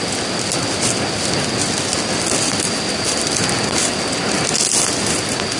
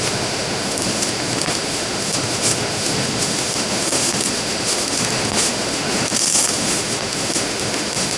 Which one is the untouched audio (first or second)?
first